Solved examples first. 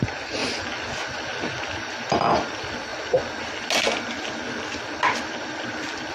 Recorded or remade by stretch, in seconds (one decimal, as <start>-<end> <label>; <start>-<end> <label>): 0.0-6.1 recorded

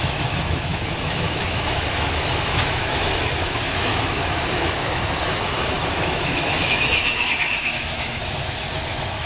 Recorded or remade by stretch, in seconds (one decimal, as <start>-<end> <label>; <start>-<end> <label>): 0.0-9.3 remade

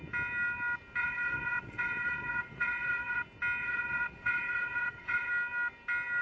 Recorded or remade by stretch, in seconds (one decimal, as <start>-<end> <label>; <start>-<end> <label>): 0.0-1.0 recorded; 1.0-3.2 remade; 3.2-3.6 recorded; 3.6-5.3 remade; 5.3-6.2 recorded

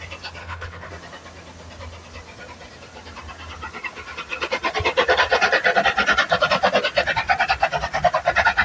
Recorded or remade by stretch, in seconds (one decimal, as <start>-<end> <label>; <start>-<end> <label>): 0.0-0.4 recorded; 0.4-0.9 remade; 0.9-8.6 recorded

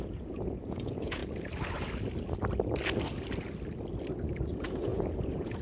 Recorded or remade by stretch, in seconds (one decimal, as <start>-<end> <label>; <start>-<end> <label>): 0.0-1.2 remade; 1.2-4.5 recorded; 4.5-5.6 remade

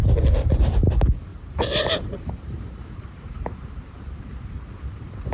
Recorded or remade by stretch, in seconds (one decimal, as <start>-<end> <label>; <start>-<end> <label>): 0.0-1.3 recorded; 1.3-3.3 remade; 3.3-5.3 recorded

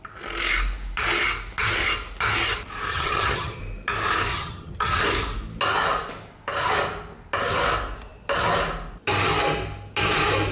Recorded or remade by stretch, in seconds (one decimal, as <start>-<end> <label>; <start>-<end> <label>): 0.0-2.9 recorded; 2.9-3.6 remade; 3.6-4.3 recorded; 4.3-5.0 remade; 5.0-10.5 recorded